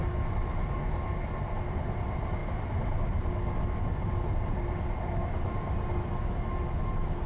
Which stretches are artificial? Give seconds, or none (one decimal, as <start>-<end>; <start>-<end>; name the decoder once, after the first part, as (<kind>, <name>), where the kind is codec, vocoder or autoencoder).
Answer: none